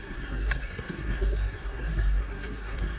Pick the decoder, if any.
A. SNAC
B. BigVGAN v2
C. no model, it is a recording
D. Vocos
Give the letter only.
A